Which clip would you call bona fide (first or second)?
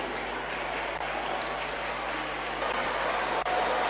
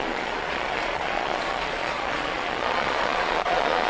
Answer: first